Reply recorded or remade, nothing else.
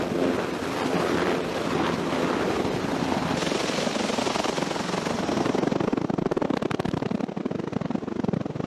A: recorded